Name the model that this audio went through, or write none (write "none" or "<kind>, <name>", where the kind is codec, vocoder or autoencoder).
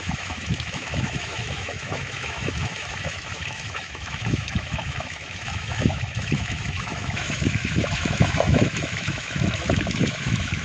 autoencoder, DAC-VAE